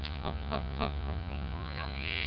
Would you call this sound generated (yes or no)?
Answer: yes